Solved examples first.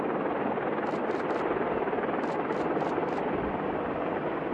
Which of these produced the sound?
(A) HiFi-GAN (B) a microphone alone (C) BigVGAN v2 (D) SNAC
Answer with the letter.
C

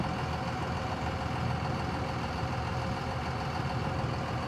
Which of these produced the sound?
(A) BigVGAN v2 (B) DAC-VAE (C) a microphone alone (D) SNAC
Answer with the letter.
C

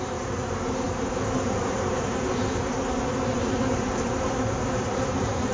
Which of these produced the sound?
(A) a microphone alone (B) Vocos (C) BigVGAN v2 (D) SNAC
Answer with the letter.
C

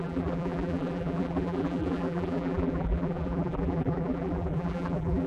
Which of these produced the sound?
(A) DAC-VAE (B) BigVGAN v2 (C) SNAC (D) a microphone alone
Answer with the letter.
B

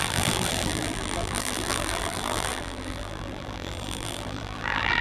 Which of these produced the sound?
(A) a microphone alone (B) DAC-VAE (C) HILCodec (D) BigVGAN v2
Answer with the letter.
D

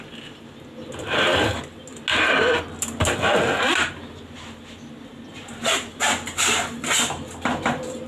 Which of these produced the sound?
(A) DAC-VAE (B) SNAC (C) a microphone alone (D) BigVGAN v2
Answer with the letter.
C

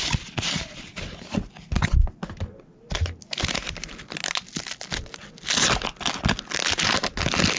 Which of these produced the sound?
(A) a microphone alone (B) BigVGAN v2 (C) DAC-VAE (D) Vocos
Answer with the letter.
A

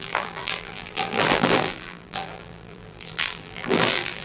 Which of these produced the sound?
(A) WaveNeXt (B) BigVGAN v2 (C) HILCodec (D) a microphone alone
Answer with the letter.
B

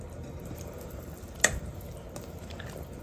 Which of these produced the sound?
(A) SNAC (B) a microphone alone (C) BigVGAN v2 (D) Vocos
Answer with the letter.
B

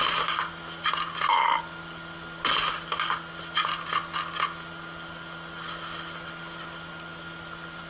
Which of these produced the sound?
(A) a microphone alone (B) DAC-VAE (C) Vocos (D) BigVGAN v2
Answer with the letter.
A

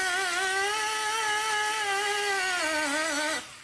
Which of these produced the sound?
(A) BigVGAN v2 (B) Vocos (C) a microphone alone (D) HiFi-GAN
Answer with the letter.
C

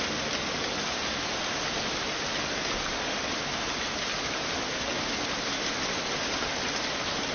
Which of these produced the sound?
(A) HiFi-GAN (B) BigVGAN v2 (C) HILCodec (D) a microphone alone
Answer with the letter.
D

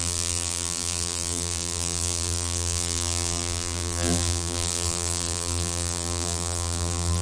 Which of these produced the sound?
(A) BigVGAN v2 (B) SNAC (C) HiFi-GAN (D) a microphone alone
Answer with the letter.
A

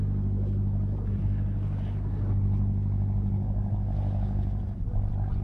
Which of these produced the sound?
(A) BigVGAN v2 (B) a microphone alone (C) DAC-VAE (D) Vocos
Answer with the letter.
B